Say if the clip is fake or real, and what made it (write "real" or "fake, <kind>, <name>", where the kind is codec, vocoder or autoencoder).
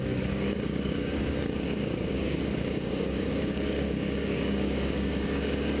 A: fake, codec, DAC